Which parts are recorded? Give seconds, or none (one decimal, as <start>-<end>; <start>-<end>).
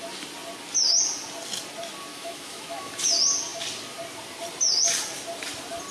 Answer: 0.0-2.1; 2.9-5.9